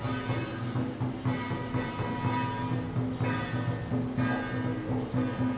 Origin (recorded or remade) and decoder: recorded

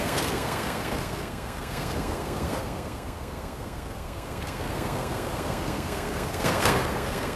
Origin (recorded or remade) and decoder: remade, codec, SNAC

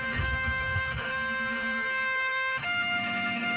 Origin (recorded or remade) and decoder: remade, autoencoder, DAC-VAE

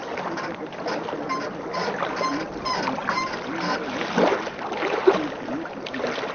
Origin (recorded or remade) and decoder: recorded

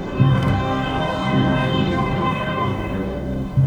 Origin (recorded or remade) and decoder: remade, codec, DAC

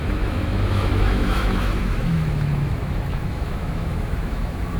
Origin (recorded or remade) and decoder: remade, autoencoder, DAC-VAE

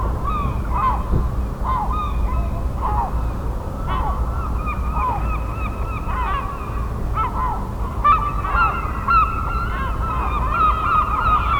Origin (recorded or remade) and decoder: recorded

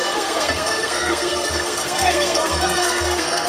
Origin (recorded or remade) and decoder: remade, codec, SNAC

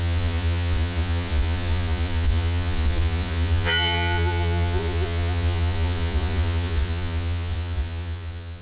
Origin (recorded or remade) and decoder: remade, vocoder, Vocos